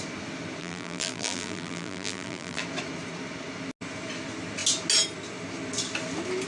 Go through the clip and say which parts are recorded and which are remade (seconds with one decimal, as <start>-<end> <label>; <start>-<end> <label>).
0.0-0.6 recorded; 0.6-2.6 remade; 2.6-6.5 recorded